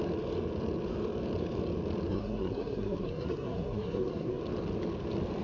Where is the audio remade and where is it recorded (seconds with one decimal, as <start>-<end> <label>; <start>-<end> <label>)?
0.0-2.1 recorded; 2.1-4.4 remade; 4.4-5.4 recorded